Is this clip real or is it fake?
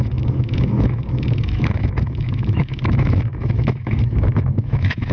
fake